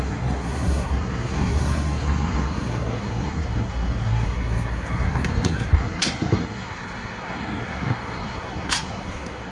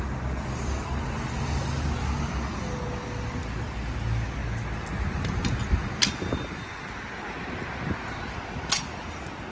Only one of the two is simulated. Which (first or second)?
first